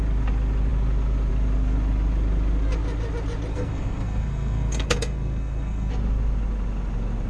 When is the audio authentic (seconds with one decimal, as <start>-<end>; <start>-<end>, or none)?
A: 0.0-3.5; 5.9-7.3